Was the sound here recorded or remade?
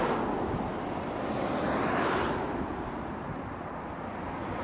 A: recorded